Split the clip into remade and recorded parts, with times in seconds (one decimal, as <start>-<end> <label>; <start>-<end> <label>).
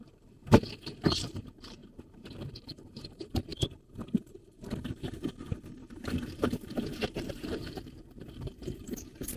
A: 0.0-9.4 remade